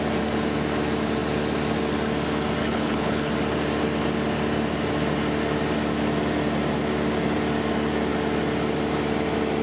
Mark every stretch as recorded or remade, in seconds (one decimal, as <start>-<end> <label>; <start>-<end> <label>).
0.0-2.6 recorded; 2.6-3.3 remade; 3.3-9.6 recorded

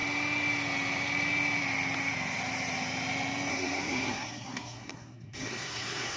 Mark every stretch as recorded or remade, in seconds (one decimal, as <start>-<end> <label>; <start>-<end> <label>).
0.0-3.5 recorded; 3.5-6.2 remade

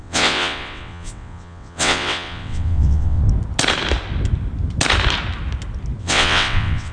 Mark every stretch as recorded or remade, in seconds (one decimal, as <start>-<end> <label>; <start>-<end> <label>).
0.0-3.2 remade; 3.2-6.0 recorded; 6.0-6.9 remade

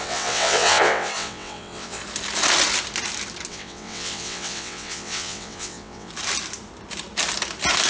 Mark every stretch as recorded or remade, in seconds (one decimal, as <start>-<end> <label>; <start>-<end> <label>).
0.0-2.0 remade; 2.0-3.5 recorded; 3.5-6.1 remade; 6.1-7.9 recorded

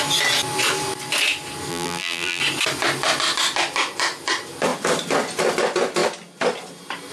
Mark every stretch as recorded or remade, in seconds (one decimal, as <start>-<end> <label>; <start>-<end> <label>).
0.0-1.7 recorded; 1.7-2.4 remade; 2.4-7.1 recorded

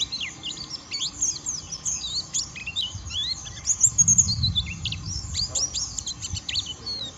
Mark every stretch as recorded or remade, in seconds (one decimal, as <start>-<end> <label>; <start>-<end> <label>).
0.0-2.6 recorded; 2.6-3.6 remade; 3.6-7.2 recorded